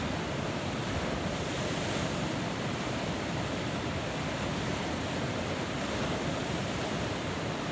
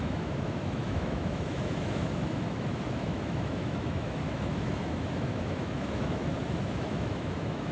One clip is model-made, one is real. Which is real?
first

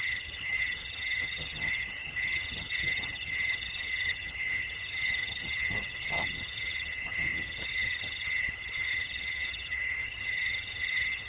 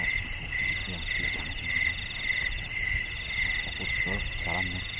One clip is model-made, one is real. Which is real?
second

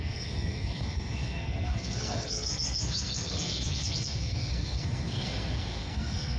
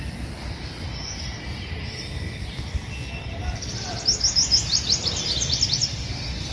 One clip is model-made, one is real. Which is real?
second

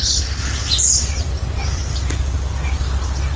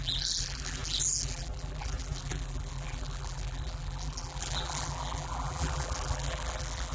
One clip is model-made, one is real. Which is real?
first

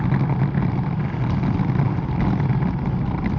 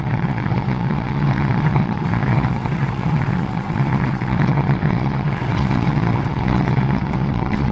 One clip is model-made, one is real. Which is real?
first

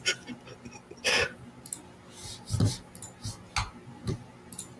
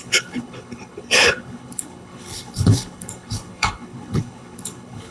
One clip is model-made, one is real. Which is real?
first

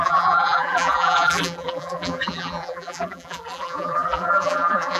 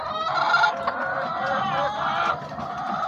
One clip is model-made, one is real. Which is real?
second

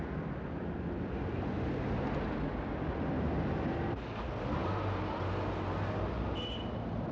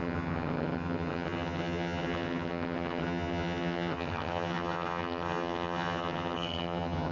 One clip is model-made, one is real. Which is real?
first